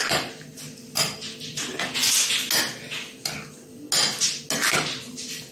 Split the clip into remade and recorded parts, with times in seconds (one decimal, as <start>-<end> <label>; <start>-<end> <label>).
0.0-5.5 recorded